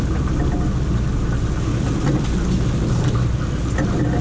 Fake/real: real